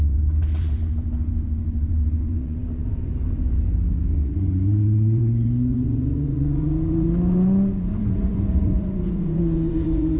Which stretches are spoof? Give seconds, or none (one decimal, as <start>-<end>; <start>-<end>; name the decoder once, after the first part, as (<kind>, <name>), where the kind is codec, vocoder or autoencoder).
0.0-10.2 (vocoder, Vocos)